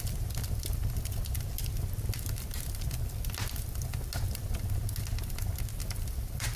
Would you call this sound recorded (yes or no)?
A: yes